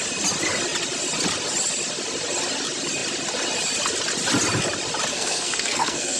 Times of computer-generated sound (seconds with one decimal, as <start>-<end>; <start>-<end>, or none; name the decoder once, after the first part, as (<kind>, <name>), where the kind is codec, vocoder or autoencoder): 5.1-6.2 (codec, SNAC)